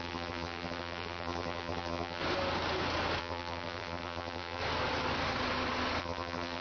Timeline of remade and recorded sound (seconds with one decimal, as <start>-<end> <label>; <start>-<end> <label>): 0.0-2.2 remade; 2.2-3.2 recorded; 3.2-4.6 remade; 4.6-6.0 recorded; 6.0-6.6 remade